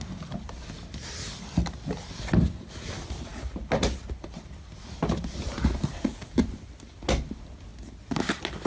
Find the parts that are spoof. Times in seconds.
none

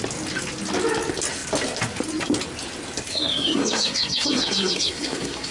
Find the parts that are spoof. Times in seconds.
3.1-5.5 (codec, SNAC)

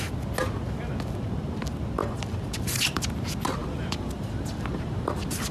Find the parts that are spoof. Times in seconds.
2.0-3.0 (vocoder, BigVGAN v2); 3.6-5.5

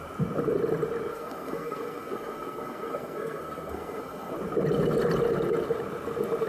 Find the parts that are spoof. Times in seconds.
1.1-4.3 (codec, SNAC)

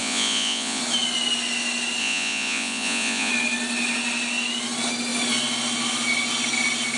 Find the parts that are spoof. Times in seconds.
0.0-0.8 (vocoder, Vocos); 2.0-3.3